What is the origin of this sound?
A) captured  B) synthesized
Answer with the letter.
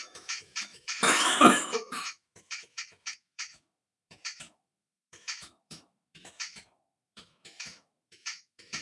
B